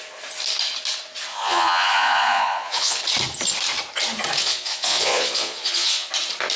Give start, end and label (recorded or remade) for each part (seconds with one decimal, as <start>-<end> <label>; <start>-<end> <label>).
0.0-1.3 recorded; 1.3-3.0 remade; 3.0-4.4 recorded; 4.4-6.1 remade; 6.1-6.6 recorded